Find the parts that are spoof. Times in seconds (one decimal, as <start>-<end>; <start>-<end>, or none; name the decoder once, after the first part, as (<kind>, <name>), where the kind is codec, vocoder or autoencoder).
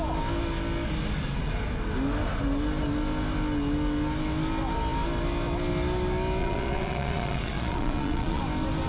6.4-8.4 (vocoder, Vocos)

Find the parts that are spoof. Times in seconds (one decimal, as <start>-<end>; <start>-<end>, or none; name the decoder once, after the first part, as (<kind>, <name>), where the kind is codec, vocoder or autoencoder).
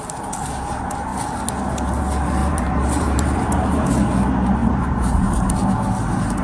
2.4-4.1 (vocoder, BigVGAN v2); 4.6-5.4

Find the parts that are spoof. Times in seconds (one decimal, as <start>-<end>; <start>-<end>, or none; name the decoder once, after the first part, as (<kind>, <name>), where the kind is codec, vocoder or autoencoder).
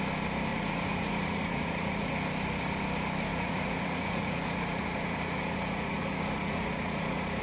0.5-2.1 (vocoder, Vocos); 3.3-7.4